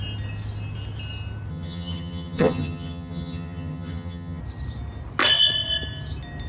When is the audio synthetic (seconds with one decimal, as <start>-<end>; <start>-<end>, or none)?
1.5-4.4